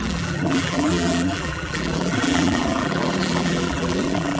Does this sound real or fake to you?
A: fake